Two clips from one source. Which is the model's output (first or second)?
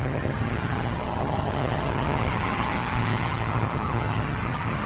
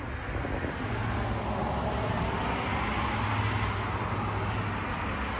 first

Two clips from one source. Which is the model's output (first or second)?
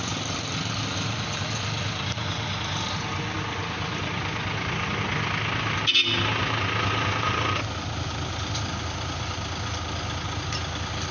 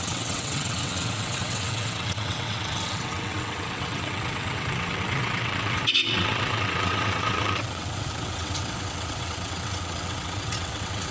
second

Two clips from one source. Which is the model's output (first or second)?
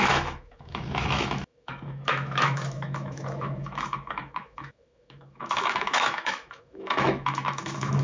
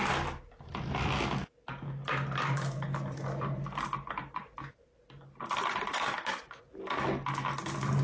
first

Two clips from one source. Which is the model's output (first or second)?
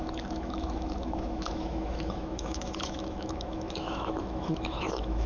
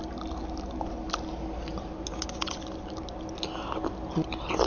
first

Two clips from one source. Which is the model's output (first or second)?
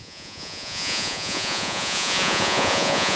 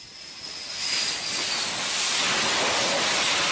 first